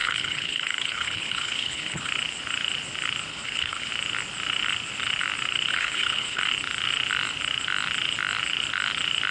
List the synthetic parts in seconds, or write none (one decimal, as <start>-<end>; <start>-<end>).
0.0-2.1; 3.3-3.9; 5.7-6.4